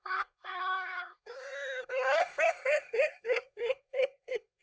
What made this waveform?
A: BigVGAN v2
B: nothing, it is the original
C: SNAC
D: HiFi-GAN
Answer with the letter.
C